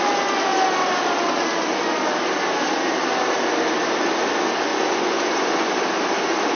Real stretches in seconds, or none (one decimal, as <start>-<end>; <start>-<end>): 0.0-4.7; 5.7-6.5